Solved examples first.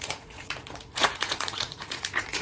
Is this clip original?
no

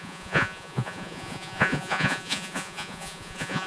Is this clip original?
no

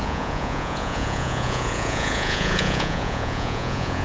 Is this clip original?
no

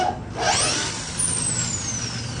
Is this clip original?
yes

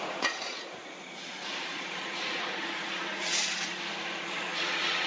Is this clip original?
no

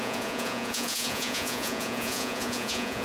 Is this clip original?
no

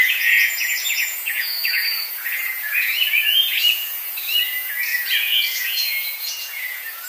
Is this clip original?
no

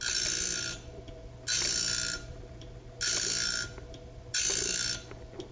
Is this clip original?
yes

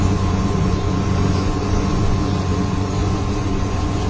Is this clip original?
no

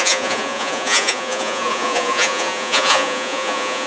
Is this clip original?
no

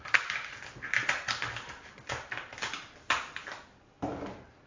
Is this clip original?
yes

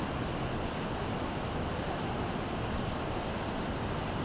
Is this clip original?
yes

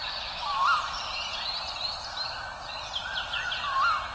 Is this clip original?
yes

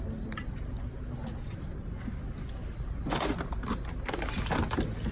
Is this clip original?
yes